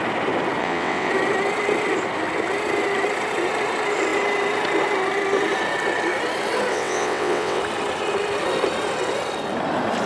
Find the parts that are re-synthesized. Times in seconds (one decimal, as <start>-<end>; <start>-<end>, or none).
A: 0.6-1.1; 6.7-7.6